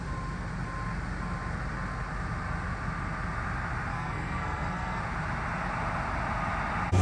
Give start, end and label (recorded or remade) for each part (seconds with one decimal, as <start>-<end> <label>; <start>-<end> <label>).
0.0-3.9 recorded; 3.9-5.0 remade; 5.0-7.0 recorded

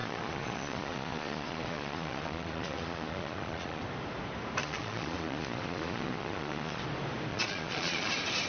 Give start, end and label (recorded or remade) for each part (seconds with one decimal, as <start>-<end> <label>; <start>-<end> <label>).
0.0-3.8 remade; 3.8-4.6 recorded; 4.6-6.8 remade; 6.8-7.3 recorded; 7.3-8.1 remade; 8.1-8.5 recorded